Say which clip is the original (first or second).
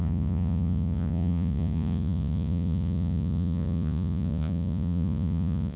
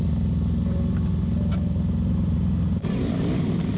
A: second